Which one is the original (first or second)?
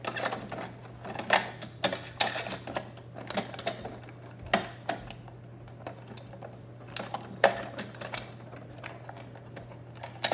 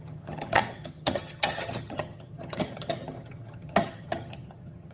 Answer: first